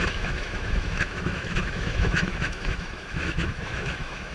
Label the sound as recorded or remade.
remade